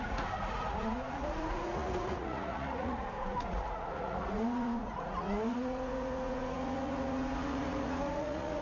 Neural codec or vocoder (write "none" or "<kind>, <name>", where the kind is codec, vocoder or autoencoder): vocoder, Vocos